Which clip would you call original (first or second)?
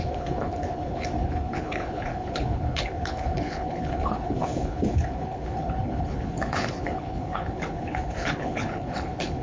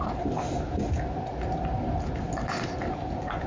second